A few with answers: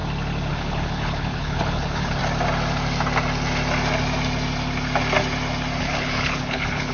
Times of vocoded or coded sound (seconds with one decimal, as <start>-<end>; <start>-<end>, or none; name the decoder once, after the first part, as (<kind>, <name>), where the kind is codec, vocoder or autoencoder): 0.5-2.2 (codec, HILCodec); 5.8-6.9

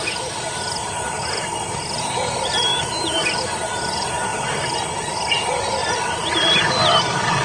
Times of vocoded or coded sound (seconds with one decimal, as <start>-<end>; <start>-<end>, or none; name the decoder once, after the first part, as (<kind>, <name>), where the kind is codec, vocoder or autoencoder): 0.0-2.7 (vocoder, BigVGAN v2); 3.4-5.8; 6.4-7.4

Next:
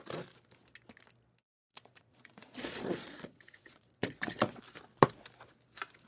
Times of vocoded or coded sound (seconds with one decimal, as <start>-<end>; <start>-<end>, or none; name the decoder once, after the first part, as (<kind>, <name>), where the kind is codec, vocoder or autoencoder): 1.7-4.6 (vocoder, Vocos)